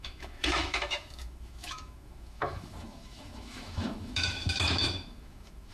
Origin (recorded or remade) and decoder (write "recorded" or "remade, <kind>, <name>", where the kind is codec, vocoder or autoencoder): remade, autoencoder, DAC-VAE